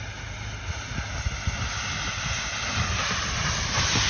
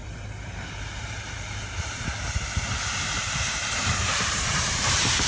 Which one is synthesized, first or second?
second